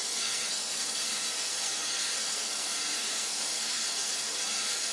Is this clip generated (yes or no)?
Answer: yes